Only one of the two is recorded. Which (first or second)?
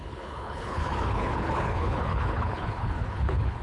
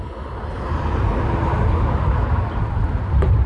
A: second